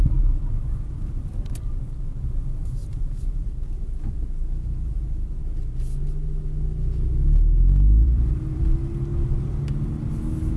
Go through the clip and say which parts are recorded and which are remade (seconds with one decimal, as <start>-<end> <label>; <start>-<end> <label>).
0.0-7.6 recorded; 7.6-8.6 remade; 8.6-9.1 recorded; 9.1-10.1 remade; 10.1-10.6 recorded